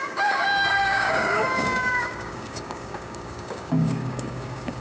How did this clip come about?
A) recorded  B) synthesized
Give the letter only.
B